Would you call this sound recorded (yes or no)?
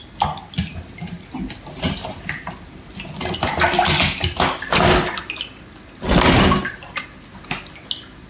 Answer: yes